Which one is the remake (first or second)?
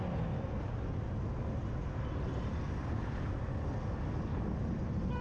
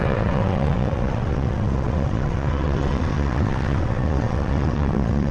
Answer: second